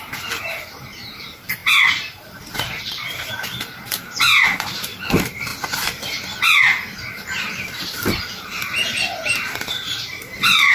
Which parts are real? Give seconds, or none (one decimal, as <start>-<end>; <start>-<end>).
5.5-7.1